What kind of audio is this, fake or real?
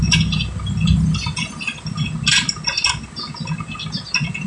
real